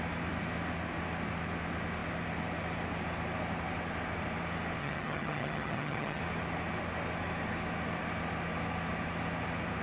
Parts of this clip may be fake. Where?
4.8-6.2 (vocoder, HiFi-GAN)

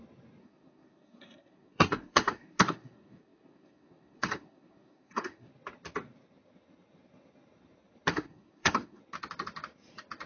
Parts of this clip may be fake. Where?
0.4-5.5 (codec, SNAC); 8.1-9.0

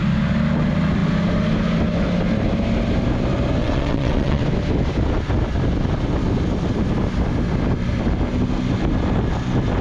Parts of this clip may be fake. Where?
3.6-4.4 (vocoder, WaveNeXt)

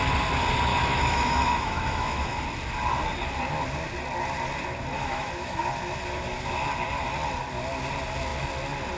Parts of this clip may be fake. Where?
0.7-2.4 (autoencoder, DAC-VAE); 4.9-5.6

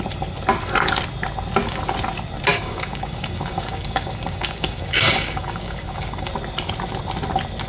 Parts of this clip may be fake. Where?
2.5-6.3 (codec, DAC)

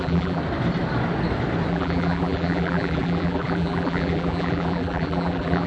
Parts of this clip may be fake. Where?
0.0-0.4 (vocoder, BigVGAN v2); 1.7-5.7

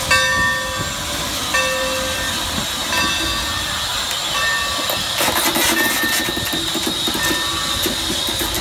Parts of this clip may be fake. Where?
none